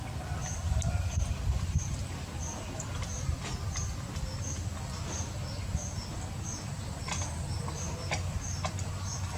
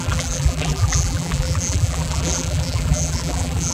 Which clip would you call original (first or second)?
first